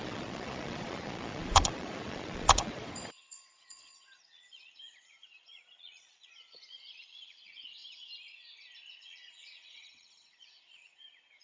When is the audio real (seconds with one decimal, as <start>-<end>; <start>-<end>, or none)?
7.8-9.0